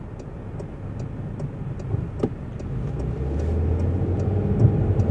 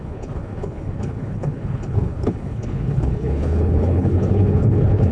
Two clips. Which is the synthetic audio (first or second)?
second